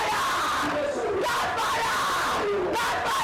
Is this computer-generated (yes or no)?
no